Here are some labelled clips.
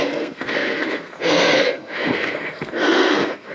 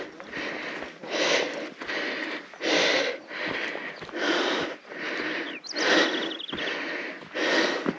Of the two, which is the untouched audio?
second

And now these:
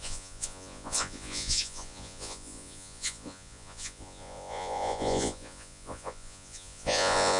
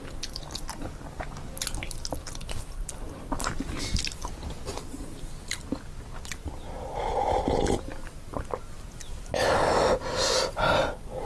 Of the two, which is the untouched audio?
second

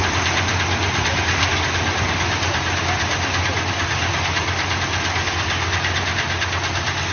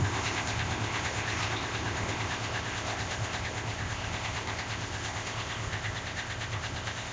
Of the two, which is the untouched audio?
first